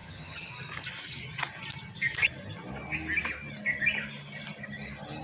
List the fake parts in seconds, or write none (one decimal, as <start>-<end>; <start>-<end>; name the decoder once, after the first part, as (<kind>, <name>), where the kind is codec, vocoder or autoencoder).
0.0-0.5 (vocoder, HiFi-GAN)